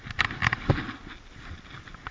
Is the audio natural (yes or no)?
yes